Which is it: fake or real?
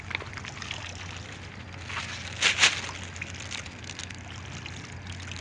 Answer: real